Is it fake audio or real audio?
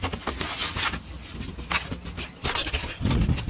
real